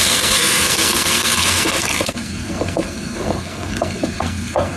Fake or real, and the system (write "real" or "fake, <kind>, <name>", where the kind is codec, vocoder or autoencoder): fake, codec, SNAC